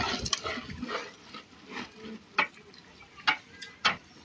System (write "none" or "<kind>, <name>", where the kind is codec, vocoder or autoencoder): none